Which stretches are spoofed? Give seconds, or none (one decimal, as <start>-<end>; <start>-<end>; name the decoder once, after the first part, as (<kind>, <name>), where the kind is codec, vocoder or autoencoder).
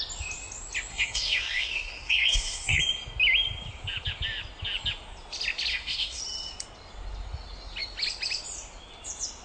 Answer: 0.9-2.8 (codec, SNAC); 5.7-6.2